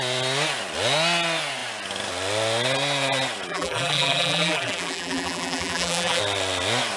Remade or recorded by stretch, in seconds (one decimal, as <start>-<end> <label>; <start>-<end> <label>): 0.0-3.5 recorded; 3.5-6.2 remade; 6.2-7.0 recorded